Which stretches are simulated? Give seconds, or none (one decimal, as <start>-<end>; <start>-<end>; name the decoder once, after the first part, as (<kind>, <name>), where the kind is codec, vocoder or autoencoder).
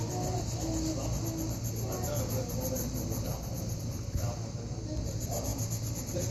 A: 3.3-3.8 (vocoder, BigVGAN v2)